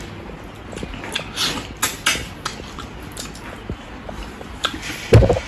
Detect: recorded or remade recorded